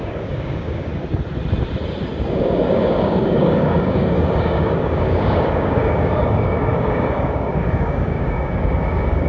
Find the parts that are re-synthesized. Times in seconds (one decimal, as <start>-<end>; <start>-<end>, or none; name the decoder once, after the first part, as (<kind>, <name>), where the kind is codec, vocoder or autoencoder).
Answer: 0.0-0.9 (codec, DAC); 2.3-9.3